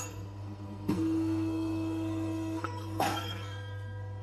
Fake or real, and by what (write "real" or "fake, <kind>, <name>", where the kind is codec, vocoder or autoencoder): fake, codec, SNAC